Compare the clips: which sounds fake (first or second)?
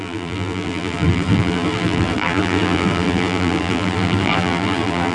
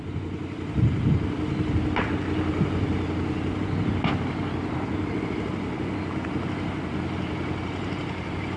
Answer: first